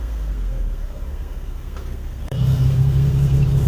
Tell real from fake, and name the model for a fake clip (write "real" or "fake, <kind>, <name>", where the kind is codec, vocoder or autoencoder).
fake, codec, SNAC